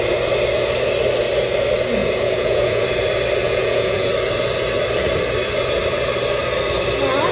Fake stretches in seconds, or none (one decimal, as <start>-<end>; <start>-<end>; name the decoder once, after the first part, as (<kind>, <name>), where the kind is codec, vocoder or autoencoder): 2.0-2.8 (vocoder, Vocos); 3.4-4.1